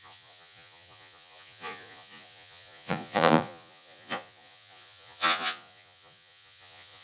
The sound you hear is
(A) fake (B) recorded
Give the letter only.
A